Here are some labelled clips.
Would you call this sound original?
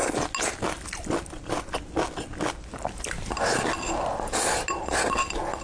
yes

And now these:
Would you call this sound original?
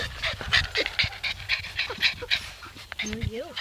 yes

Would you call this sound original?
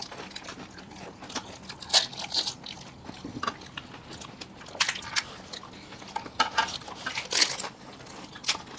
yes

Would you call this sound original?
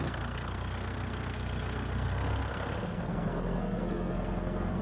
no